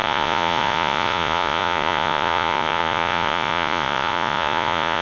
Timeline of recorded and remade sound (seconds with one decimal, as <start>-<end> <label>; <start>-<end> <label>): 0.0-5.0 remade